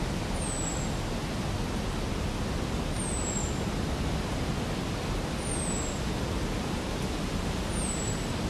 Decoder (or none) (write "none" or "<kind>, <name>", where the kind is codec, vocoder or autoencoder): none